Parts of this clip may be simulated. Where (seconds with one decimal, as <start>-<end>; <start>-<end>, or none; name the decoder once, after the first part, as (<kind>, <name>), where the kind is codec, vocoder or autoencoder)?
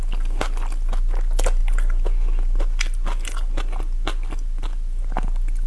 none